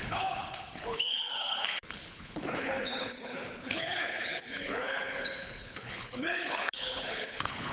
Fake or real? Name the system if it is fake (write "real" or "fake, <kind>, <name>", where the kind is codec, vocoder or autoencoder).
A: fake, codec, HILCodec